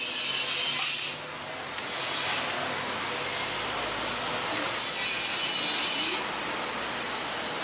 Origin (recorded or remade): recorded